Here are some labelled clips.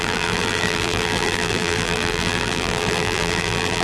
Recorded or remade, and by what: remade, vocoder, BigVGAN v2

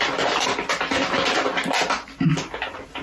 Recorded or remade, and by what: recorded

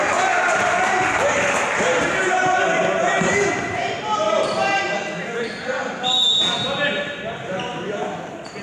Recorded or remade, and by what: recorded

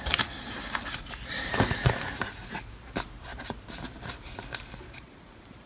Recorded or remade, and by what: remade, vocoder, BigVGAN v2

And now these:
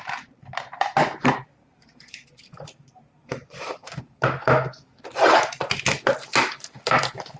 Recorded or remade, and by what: recorded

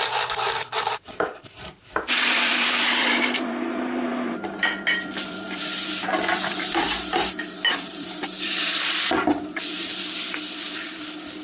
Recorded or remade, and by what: remade, vocoder, BigVGAN v2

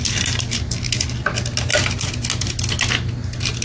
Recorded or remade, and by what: recorded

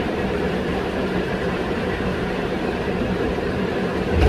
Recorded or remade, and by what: remade, vocoder, BigVGAN v2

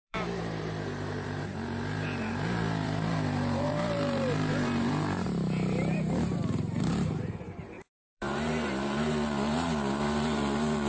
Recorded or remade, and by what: remade, vocoder, BigVGAN v2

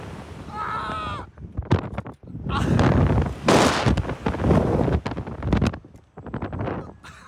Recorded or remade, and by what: recorded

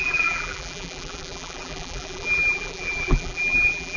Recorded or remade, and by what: remade, vocoder, BigVGAN v2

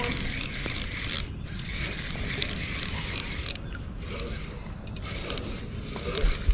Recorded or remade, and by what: recorded